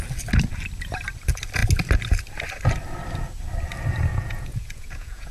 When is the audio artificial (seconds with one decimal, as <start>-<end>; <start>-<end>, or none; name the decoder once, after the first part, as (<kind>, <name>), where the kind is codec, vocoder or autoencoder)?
4.1-5.3 (vocoder, Vocos)